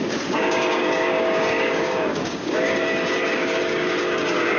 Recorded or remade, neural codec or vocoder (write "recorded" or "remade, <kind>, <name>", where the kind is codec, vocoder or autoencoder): remade, codec, DAC